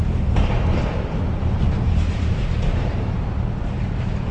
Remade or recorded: remade